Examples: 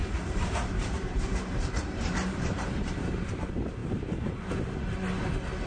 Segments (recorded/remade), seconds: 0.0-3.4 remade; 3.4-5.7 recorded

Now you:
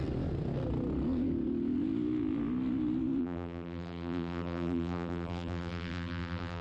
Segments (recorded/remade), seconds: 0.0-3.2 recorded; 3.2-6.6 remade

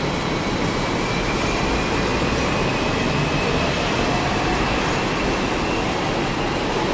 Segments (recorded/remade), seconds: 0.0-2.1 remade; 2.1-2.7 recorded; 2.7-6.9 remade

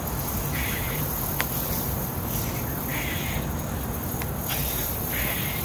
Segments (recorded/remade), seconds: 0.0-4.6 recorded; 4.6-5.1 remade; 5.1-5.6 recorded

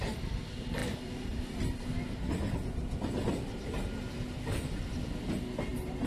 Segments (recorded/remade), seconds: 0.0-3.2 recorded; 3.2-5.3 remade; 5.3-6.1 recorded

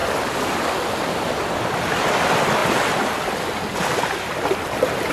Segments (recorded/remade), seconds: 0.0-5.1 recorded

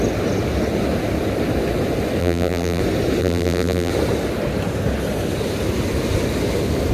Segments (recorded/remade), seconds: 0.0-2.2 recorded; 2.2-2.8 remade; 2.8-3.2 recorded; 3.2-3.9 remade; 3.9-6.9 recorded

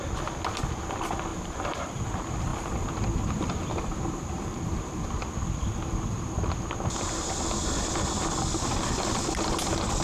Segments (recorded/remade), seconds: 0.0-1.3 recorded; 1.3-2.0 remade; 2.0-2.5 recorded; 2.5-5.1 remade; 5.1-5.6 recorded; 5.6-6.4 remade; 6.4-10.0 recorded